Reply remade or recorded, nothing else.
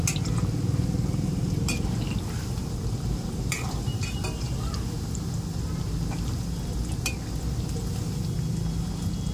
recorded